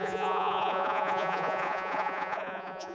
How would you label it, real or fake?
fake